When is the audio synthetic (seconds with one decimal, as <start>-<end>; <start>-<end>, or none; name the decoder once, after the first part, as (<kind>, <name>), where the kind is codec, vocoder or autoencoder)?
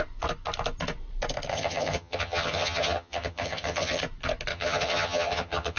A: 1.5-4.0 (vocoder, HiFi-GAN); 4.5-5.8